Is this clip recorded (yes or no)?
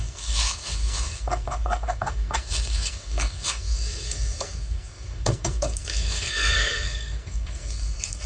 no